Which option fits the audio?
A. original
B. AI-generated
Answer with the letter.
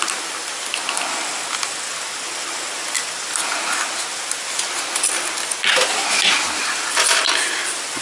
A